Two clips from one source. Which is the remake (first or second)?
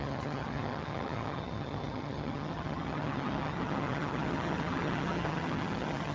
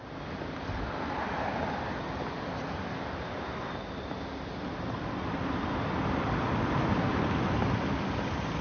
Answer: first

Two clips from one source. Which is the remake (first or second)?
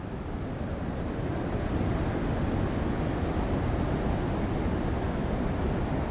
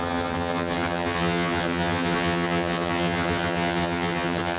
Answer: second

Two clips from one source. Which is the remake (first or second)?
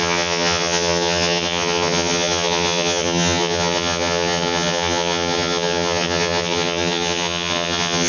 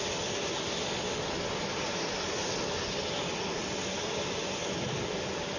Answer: first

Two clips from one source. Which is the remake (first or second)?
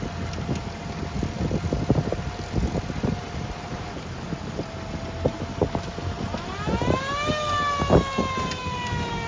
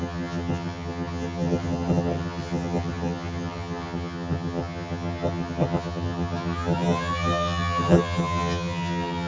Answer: second